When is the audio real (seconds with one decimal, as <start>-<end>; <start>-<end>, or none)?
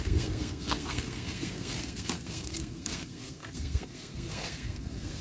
none